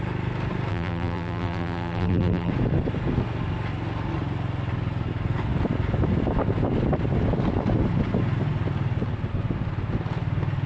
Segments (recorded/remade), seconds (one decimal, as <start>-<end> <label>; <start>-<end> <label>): 0.0-0.7 recorded; 0.7-2.5 remade; 2.5-10.7 recorded